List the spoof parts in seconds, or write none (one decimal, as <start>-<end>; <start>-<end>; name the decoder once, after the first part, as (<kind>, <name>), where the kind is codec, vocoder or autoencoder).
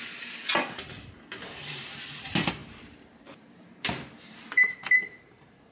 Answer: 0.0-0.4 (vocoder, BigVGAN v2); 1.6-5.7